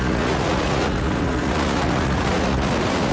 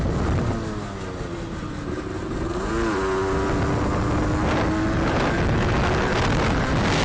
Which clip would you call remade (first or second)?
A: first